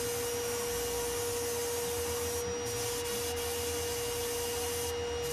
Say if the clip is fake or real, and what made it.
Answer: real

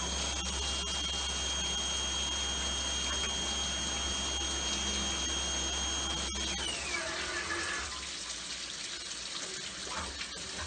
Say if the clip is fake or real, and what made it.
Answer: real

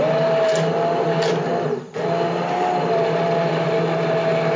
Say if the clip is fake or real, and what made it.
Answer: real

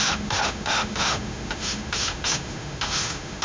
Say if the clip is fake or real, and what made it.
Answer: fake, autoencoder, DAC-VAE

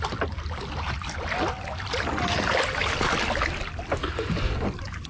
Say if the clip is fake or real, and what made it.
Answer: real